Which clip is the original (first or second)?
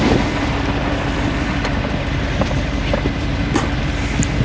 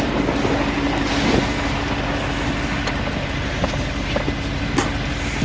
second